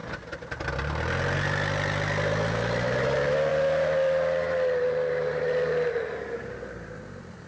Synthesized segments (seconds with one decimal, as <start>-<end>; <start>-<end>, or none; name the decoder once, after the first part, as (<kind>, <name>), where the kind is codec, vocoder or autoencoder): none

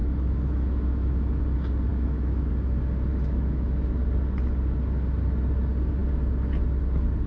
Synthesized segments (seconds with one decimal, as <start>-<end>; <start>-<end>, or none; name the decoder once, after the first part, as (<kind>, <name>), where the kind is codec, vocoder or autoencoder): 0.0-1.4 (autoencoder, DAC-VAE); 1.9-2.5; 3.1-3.9

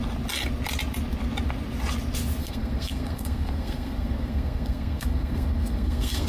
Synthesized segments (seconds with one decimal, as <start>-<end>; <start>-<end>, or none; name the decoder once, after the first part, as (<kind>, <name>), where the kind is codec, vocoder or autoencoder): 2.4-6.3 (codec, SNAC)

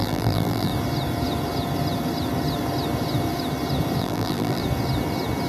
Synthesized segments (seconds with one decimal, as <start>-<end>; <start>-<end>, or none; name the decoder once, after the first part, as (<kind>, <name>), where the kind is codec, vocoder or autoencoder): 0.0-0.7 (vocoder, BigVGAN v2); 4.0-4.6